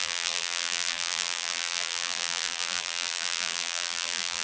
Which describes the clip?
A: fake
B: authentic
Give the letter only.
A